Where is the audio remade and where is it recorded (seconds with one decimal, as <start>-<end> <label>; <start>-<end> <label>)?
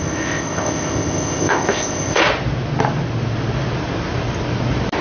0.0-2.2 remade; 2.2-5.0 recorded